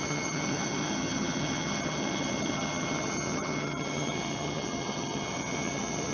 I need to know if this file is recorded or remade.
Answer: remade